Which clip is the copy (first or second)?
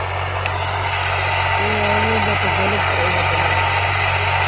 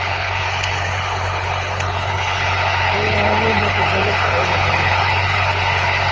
second